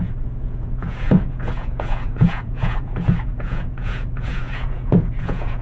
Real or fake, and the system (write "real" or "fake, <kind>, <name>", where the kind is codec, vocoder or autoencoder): fake, vocoder, Vocos